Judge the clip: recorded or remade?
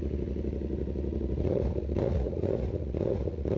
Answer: remade